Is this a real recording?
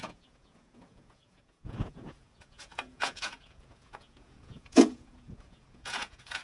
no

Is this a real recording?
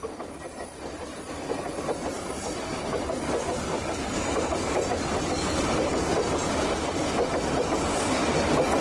yes